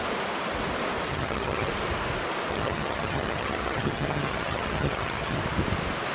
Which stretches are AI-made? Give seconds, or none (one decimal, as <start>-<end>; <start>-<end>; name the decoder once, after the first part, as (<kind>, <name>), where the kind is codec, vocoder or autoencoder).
1.1-1.7 (vocoder, HiFi-GAN); 2.5-5.4